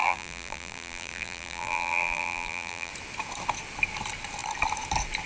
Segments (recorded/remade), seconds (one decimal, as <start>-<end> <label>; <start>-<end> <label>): 0.0-2.9 remade; 2.9-5.3 recorded